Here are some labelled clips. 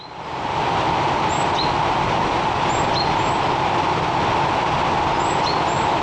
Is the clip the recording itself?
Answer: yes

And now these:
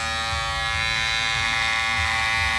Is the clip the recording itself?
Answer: yes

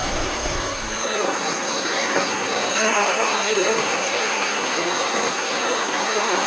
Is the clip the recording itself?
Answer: no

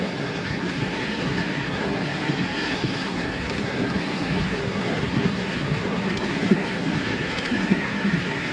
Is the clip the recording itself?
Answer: no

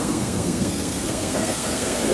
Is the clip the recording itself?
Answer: no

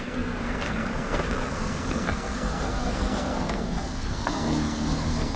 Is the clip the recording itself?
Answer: no